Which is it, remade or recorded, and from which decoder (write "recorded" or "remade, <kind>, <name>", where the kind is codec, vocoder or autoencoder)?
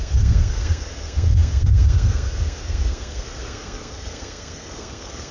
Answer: remade, codec, SNAC